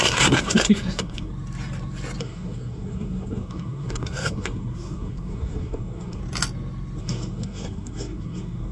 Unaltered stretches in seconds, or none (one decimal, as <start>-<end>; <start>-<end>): 1.3-2.2; 6.2-7.0